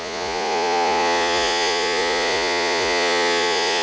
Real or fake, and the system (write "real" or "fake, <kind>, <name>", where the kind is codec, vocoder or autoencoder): fake, vocoder, Vocos